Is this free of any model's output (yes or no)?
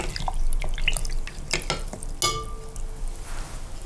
yes